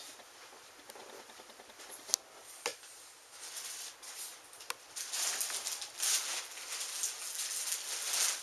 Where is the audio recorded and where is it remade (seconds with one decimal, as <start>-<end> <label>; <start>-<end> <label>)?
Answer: 0.0-2.7 recorded; 2.7-3.4 remade; 3.4-8.4 recorded